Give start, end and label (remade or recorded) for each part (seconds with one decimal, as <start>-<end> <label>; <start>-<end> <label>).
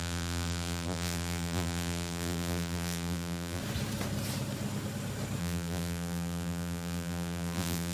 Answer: 0.0-3.6 remade; 3.6-5.4 recorded; 5.4-7.9 remade